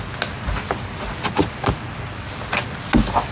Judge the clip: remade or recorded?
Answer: recorded